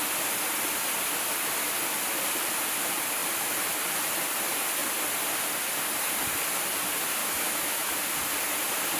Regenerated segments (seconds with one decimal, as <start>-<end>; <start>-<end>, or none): 7.2-7.9

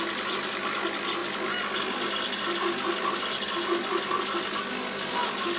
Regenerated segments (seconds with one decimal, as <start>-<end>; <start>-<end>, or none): none

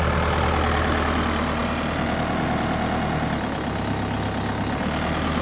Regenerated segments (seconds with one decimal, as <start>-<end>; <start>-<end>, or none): none

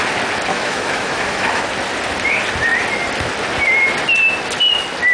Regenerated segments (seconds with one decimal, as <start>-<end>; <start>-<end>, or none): 0.5-1.7

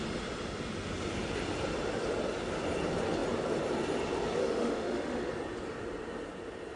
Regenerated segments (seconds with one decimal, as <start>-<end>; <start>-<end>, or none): 4.4-5.3